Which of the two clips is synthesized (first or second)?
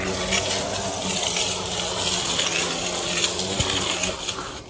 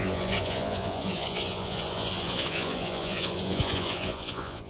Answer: second